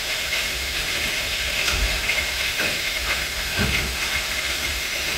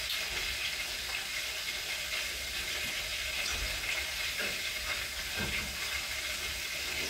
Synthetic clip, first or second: first